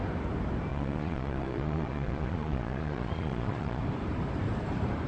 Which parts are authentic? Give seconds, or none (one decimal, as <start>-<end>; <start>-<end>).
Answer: 0.0-0.7; 3.8-5.1